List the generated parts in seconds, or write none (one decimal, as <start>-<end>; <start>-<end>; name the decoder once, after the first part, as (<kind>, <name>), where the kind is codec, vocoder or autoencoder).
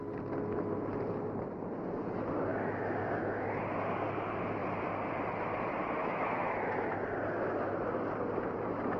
2.5-3.5 (autoencoder, DAC-VAE); 6.0-6.9